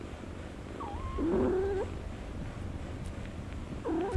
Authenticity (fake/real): real